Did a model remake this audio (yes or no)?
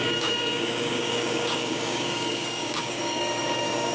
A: yes